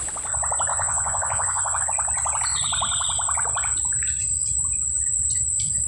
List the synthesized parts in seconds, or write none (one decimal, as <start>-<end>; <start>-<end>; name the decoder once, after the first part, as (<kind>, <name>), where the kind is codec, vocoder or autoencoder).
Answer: 0.7-1.8 (vocoder, Vocos)